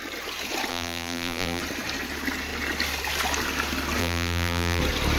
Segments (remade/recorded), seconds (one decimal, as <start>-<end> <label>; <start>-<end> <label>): 0.0-0.7 recorded; 0.7-1.6 remade; 1.6-4.0 recorded; 4.0-4.8 remade; 4.8-5.2 recorded